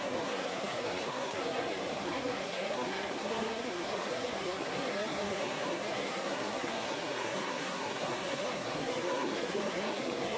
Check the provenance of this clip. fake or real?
fake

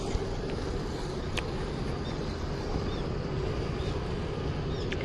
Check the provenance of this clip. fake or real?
real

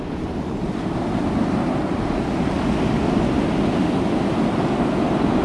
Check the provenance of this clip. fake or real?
real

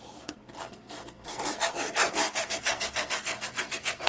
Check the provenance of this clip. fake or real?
fake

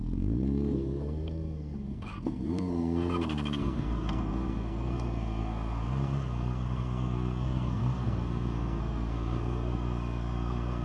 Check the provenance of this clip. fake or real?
fake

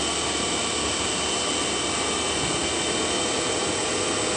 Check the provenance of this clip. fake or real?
real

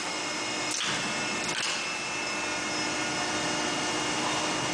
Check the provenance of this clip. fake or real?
real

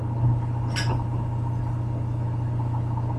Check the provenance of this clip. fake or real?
real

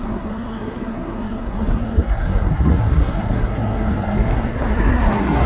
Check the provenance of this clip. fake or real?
fake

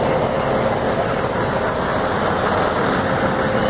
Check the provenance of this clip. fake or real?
real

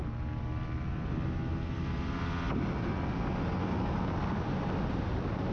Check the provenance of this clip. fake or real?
real